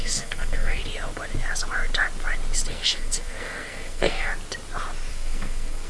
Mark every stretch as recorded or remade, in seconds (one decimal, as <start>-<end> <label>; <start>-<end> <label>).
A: 0.0-0.8 remade; 0.8-2.7 recorded; 2.7-4.3 remade; 4.3-5.1 recorded; 5.1-5.9 remade